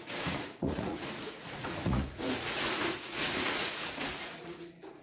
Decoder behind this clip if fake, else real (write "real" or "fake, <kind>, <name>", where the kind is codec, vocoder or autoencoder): fake, vocoder, Vocos